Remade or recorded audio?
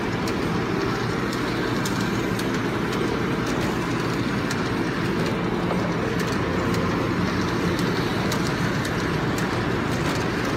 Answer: recorded